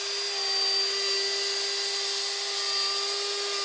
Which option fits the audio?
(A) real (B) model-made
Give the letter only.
A